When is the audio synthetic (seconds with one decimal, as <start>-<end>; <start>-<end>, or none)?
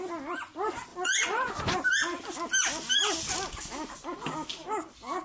0.9-1.5